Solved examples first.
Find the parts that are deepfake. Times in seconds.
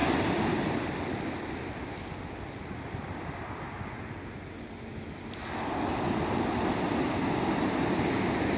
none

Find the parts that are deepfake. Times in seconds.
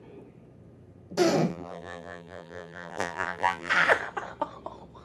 1.5-3.7 (vocoder, BigVGAN v2)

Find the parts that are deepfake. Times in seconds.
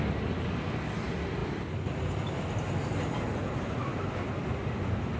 none